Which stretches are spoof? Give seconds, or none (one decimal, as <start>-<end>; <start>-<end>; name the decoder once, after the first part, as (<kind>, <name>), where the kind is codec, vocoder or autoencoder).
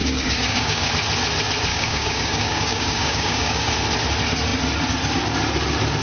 0.0-0.9 (codec, DAC); 1.7-3.7